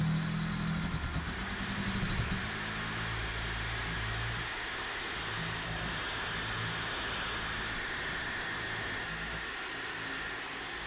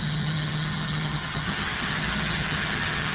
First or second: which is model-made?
second